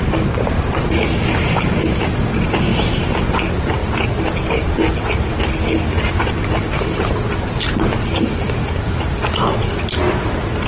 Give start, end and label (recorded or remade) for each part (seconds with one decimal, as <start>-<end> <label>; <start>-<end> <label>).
0.0-10.7 recorded